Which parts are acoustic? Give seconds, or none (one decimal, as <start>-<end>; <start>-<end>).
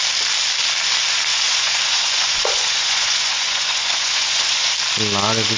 0.0-1.3; 4.7-5.6